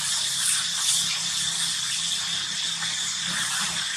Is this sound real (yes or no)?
yes